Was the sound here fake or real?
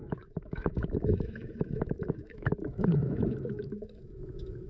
fake